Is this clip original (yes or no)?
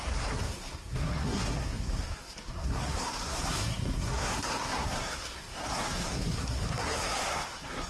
no